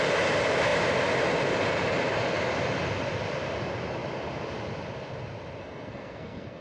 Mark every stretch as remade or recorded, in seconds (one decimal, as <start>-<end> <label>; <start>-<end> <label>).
0.0-5.6 recorded; 5.6-6.6 remade